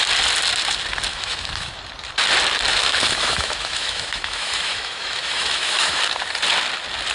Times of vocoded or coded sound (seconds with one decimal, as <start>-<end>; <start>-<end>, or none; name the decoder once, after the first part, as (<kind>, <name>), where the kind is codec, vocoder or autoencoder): 1.1-1.8 (autoencoder, DAC-VAE); 2.7-6.0